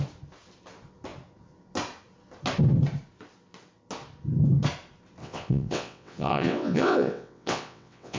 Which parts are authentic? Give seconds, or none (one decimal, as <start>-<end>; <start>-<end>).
0.0-5.2